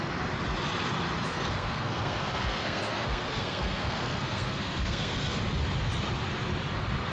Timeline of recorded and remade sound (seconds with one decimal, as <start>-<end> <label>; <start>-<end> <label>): 0.0-1.3 recorded; 1.3-5.4 remade; 5.4-7.1 recorded